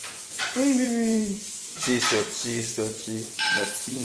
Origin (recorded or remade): remade